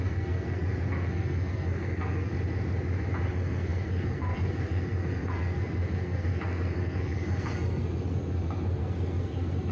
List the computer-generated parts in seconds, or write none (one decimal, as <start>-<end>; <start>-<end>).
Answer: 0.0-2.3; 3.3-9.7